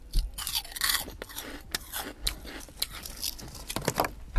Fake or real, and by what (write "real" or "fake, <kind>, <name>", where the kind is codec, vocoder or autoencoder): real